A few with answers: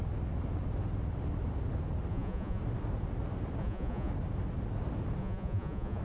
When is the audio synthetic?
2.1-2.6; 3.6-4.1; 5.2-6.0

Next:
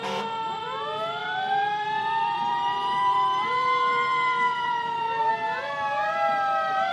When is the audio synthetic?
1.2-5.3

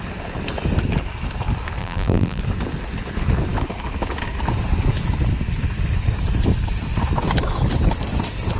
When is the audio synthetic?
1.8-2.4

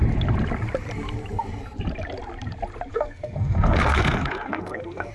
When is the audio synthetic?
2.9-5.1

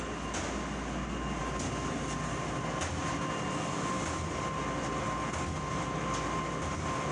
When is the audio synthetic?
none

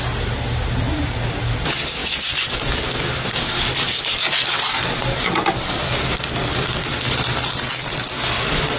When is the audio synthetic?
none